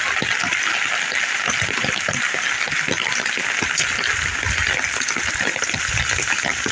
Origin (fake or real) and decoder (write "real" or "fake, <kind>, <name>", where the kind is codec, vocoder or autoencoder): real